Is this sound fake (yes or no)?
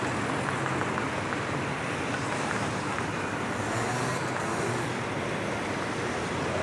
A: no